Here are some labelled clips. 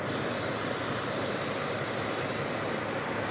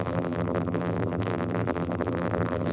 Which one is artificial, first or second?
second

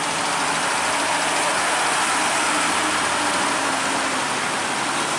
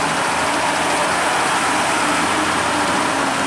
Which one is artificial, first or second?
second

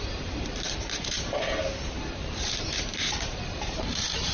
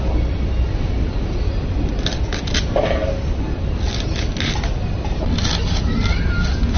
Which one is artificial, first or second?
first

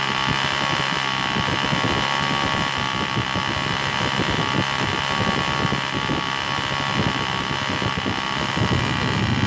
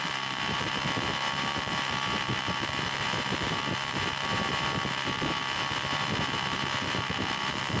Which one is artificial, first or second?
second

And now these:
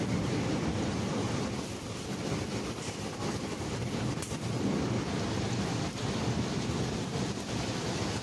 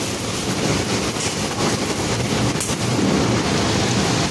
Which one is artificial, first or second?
first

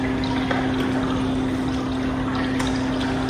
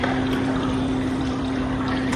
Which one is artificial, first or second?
second